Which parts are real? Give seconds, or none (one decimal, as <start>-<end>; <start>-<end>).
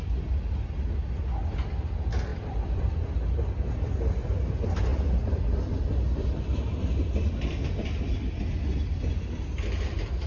0.0-2.3; 2.9-4.9; 8.0-10.3